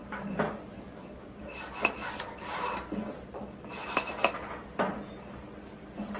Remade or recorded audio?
recorded